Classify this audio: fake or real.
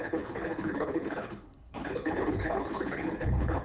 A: fake